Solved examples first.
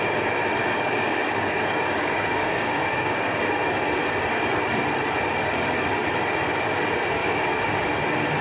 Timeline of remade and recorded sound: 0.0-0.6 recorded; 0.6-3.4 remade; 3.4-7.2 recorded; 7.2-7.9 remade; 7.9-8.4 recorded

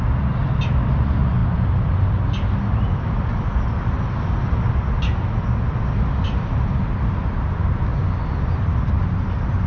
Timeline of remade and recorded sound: 0.0-9.7 recorded

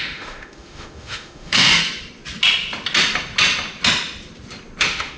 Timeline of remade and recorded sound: 0.0-1.7 remade; 1.7-4.8 recorded; 4.8-5.2 remade

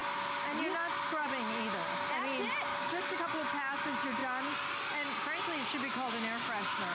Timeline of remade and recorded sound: 0.0-2.7 recorded; 2.7-3.2 remade; 3.2-6.9 recorded

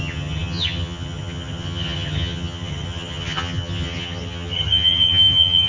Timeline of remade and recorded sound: 0.0-5.7 remade

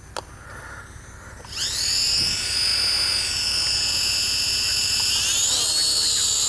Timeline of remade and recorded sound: 0.0-4.8 recorded; 4.8-5.5 remade; 5.5-6.5 recorded